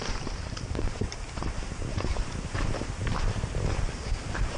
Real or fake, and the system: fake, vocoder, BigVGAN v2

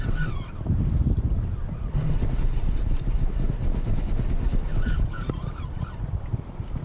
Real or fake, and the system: real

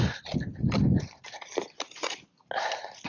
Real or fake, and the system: real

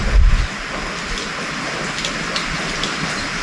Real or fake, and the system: real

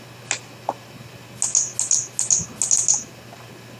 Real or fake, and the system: real